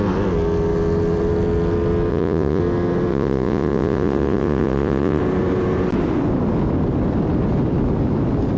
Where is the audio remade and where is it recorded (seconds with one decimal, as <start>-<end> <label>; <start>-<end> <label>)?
0.0-2.1 recorded; 2.1-2.6 remade; 2.6-3.1 recorded; 3.1-5.2 remade; 5.2-8.6 recorded